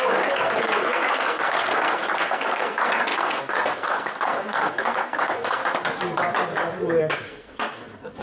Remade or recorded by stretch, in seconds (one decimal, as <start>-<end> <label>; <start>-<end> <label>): 0.0-5.6 remade; 5.6-7.0 recorded; 7.0-8.2 remade